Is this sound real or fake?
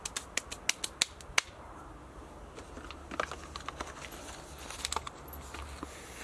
real